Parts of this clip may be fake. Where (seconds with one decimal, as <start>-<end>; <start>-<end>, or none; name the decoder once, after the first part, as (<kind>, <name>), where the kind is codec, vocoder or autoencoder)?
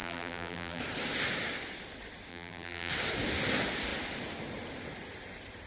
0.0-0.8 (vocoder, BigVGAN v2); 2.3-2.9